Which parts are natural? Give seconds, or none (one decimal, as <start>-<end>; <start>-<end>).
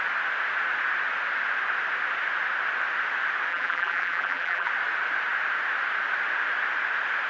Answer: 0.0-3.5; 4.7-7.3